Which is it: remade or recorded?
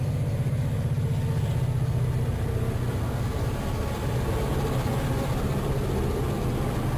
recorded